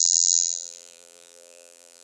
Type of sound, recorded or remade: remade